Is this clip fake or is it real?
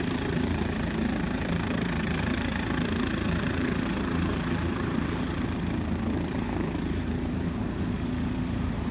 fake